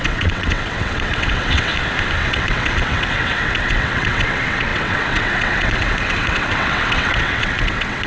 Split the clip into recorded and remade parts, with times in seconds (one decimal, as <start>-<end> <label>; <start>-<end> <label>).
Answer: 0.0-1.7 remade; 1.7-2.2 recorded; 2.2-8.1 remade